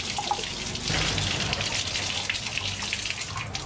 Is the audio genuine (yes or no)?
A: yes